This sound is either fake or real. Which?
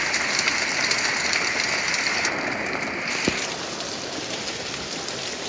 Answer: real